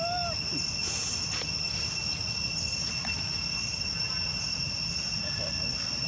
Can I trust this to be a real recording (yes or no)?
yes